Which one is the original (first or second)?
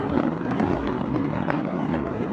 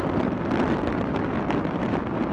second